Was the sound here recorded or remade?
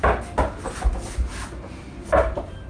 recorded